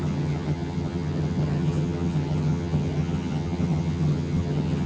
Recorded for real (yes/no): no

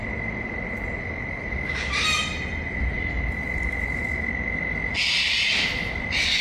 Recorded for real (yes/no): yes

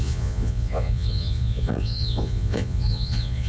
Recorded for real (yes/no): no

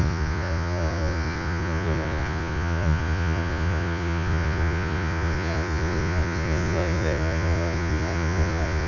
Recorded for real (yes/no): no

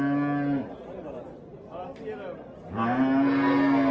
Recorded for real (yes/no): yes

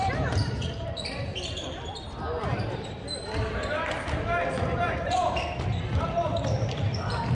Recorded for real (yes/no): no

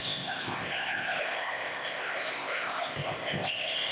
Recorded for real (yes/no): no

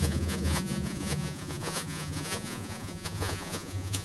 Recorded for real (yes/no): no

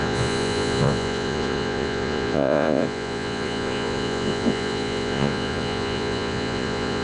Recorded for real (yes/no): no